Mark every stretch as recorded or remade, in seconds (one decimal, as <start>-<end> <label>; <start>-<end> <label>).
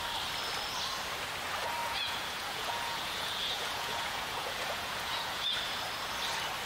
0.0-1.8 recorded; 1.8-5.8 remade; 5.8-6.7 recorded